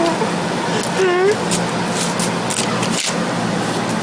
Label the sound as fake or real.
real